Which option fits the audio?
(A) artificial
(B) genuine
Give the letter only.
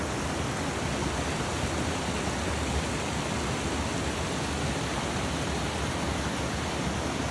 B